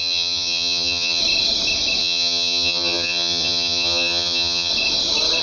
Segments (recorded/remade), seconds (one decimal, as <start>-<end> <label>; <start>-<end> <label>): 0.0-1.2 remade; 1.2-2.0 recorded; 2.0-4.7 remade; 4.7-5.4 recorded